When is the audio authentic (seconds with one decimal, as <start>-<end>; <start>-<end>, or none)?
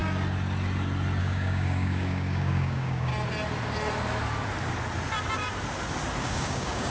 0.0-1.2; 3.1-6.2